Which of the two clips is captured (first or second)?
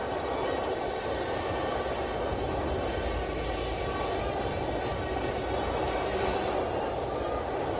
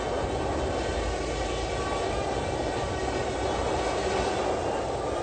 second